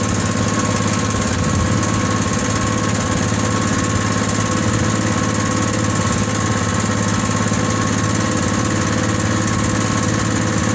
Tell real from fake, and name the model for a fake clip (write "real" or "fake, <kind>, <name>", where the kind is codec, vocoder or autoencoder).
real